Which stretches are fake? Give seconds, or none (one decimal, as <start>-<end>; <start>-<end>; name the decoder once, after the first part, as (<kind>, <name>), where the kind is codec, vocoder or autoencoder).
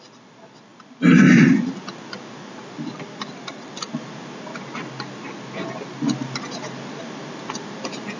none